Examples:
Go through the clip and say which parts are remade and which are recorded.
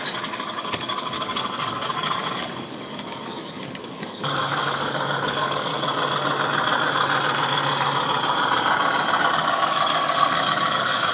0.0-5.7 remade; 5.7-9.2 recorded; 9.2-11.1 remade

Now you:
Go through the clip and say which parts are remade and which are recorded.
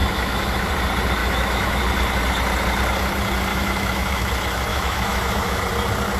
0.0-0.7 remade; 0.7-1.2 recorded; 1.2-1.8 remade; 1.8-3.5 recorded; 3.5-4.3 remade; 4.3-4.7 recorded; 4.7-5.6 remade; 5.6-6.2 recorded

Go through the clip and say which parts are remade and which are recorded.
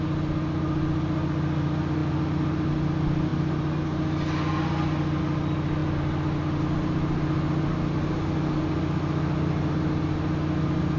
0.0-11.0 recorded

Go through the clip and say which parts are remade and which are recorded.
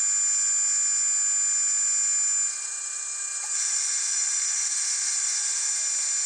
0.0-3.3 recorded; 3.3-5.7 remade; 5.7-6.3 recorded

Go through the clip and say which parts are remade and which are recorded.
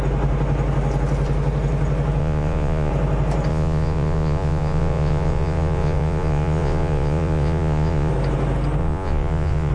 0.0-2.2 recorded; 2.2-2.9 remade; 2.9-3.5 recorded; 3.5-8.1 remade; 8.1-8.8 recorded; 8.8-9.7 remade